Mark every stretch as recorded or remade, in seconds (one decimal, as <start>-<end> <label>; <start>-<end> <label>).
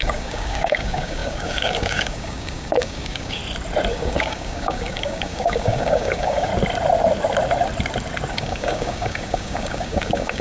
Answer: 0.0-3.4 remade; 3.4-3.9 recorded; 3.9-6.5 remade; 6.5-8.3 recorded; 8.3-10.4 remade